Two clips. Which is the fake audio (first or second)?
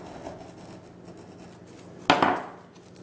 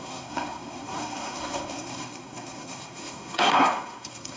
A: second